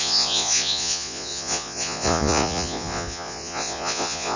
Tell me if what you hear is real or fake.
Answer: fake